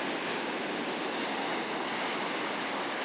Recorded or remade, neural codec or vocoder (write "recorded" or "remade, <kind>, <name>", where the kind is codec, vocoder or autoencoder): recorded